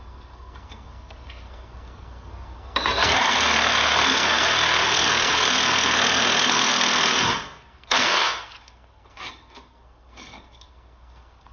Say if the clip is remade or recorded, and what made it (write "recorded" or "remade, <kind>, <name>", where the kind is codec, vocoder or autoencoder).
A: remade, codec, SNAC